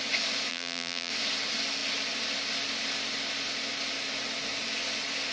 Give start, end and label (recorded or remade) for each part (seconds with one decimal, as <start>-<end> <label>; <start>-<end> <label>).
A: 0.0-0.5 recorded; 0.5-1.1 remade; 1.1-5.3 recorded